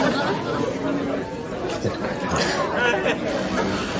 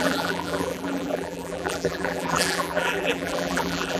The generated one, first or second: second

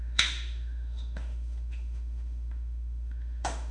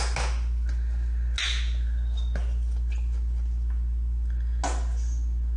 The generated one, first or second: first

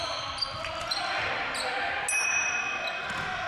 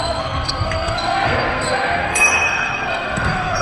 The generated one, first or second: second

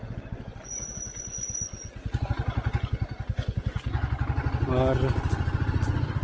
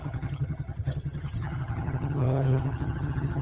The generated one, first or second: second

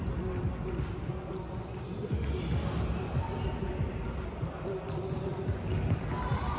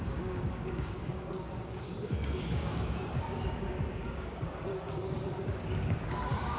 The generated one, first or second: second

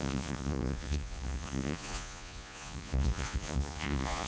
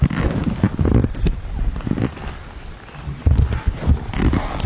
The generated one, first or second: first